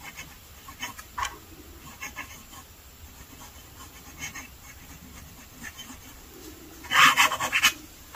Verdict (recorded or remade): recorded